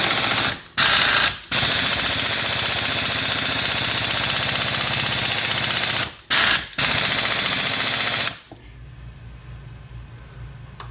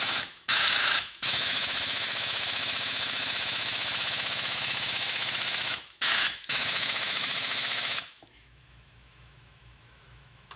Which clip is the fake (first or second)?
second